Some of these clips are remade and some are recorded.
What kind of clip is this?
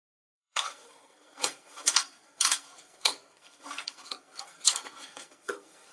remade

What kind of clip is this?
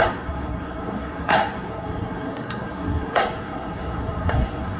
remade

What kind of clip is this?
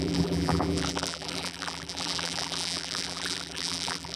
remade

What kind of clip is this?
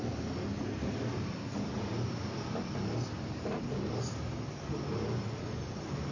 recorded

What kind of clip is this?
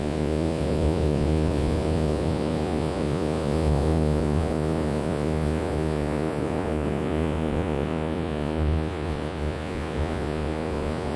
remade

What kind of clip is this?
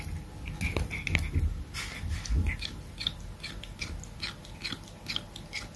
recorded